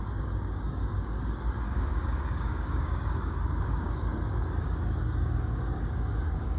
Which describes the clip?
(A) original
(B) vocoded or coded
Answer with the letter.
B